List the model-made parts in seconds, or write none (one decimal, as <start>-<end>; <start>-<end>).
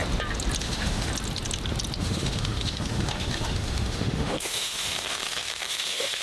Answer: 0.6-1.1; 2.0-6.2